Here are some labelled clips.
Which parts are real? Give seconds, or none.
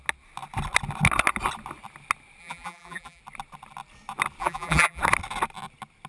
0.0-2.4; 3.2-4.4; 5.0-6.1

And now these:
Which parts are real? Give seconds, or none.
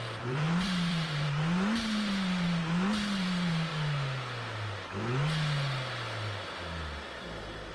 3.7-7.7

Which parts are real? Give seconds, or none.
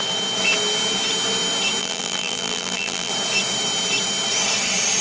0.0-1.8; 3.1-5.0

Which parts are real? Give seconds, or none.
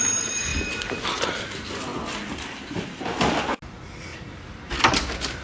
0.0-0.5; 1.3-4.1; 4.9-5.4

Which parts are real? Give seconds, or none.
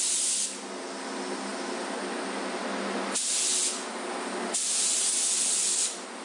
0.0-6.2